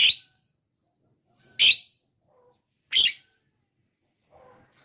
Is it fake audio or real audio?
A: real